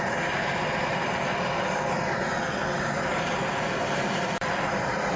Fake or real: fake